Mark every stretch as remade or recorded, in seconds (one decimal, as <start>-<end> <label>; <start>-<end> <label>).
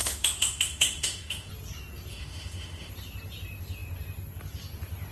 0.0-1.5 remade; 1.5-2.1 recorded; 2.1-2.9 remade; 2.9-5.1 recorded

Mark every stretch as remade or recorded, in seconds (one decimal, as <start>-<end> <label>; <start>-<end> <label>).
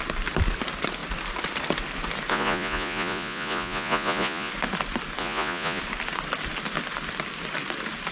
0.0-2.3 recorded; 2.3-4.5 remade; 4.5-5.2 recorded; 5.2-5.8 remade; 5.8-8.1 recorded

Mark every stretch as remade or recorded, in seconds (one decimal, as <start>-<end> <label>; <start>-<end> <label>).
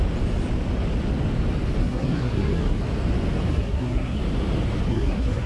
0.0-1.8 recorded; 1.8-2.8 remade; 2.8-3.5 recorded; 3.5-4.2 remade; 4.2-4.9 recorded; 4.9-5.5 remade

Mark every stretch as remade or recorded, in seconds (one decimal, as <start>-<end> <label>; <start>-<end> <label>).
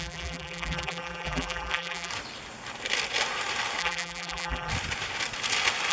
0.0-2.1 remade; 2.1-3.8 recorded; 3.8-4.7 remade; 4.7-5.9 recorded